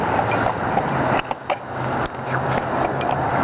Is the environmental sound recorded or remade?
recorded